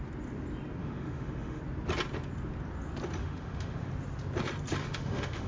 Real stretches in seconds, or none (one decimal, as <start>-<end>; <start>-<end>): 0.0-0.8; 1.6-3.2; 3.9-4.8